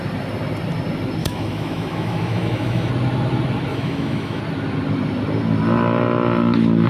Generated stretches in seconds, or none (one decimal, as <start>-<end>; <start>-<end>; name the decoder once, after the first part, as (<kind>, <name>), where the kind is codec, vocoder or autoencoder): 1.2-2.9 (autoencoder, DAC-VAE); 3.7-4.4